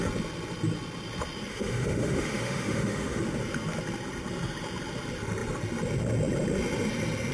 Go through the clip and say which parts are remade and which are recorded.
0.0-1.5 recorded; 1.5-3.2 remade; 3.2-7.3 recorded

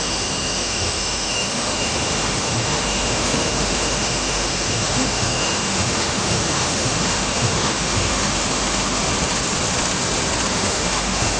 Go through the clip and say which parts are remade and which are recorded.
0.0-9.0 remade; 9.0-10.5 recorded; 10.5-11.4 remade

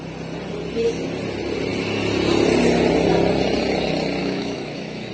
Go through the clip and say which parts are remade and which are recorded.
0.0-4.2 recorded; 4.2-5.1 remade

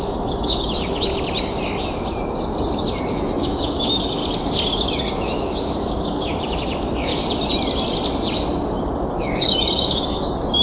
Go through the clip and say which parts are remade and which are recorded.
0.0-1.1 remade; 1.1-3.1 recorded; 3.1-4.2 remade; 4.2-5.1 recorded; 5.1-7.1 remade; 7.1-9.2 recorded; 9.2-10.6 remade

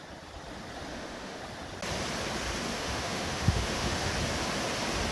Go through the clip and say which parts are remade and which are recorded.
0.0-0.9 recorded; 0.9-1.4 remade; 1.4-2.7 recorded; 2.7-4.1 remade; 4.1-5.1 recorded

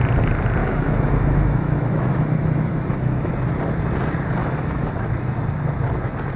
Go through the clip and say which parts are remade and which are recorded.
0.0-0.6 recorded; 0.6-3.3 remade; 3.3-4.4 recorded; 4.4-5.1 remade; 5.1-6.4 recorded

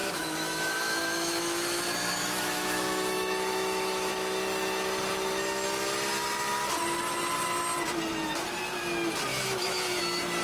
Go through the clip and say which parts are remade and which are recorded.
0.0-4.1 remade; 4.1-9.3 recorded; 9.3-10.0 remade; 10.0-10.4 recorded

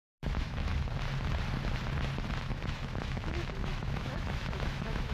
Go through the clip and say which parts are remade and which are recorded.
0.0-0.7 remade; 0.7-2.4 recorded; 2.4-5.1 remade